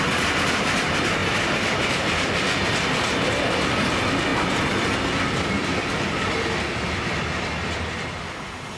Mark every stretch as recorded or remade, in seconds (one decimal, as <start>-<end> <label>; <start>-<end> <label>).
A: 0.0-8.8 recorded